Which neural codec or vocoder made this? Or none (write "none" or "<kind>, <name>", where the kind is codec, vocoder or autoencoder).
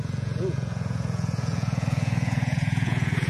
vocoder, Vocos